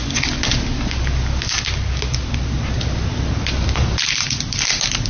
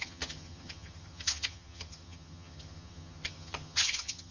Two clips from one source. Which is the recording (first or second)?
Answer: first